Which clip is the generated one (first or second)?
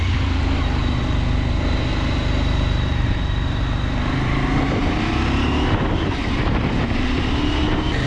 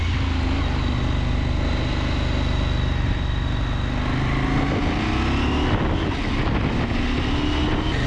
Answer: first